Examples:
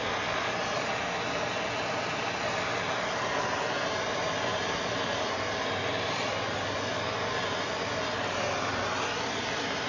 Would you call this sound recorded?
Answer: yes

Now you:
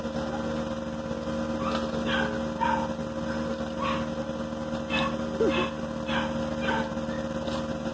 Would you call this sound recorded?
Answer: yes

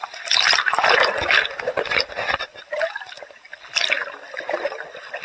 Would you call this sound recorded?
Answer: yes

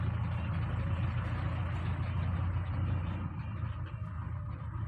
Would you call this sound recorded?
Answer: yes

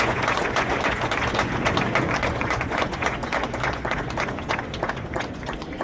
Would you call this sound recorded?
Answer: no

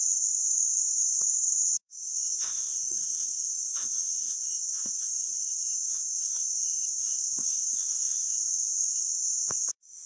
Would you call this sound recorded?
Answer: no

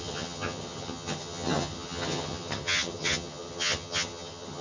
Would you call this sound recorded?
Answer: no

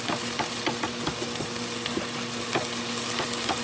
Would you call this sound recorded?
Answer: yes